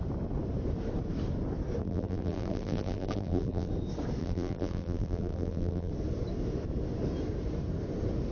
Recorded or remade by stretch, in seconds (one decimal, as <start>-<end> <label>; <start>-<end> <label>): 0.0-1.8 recorded; 1.8-3.7 remade; 3.7-4.2 recorded; 4.2-5.9 remade; 5.9-8.3 recorded